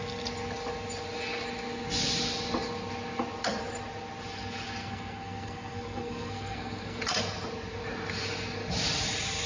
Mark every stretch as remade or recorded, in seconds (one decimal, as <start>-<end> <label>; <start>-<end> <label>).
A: 0.0-4.8 recorded; 4.8-7.0 remade; 7.0-9.5 recorded